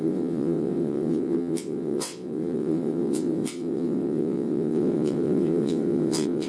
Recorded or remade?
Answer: remade